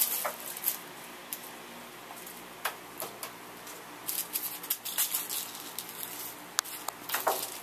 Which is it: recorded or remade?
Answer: recorded